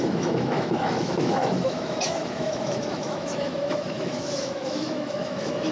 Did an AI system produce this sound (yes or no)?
yes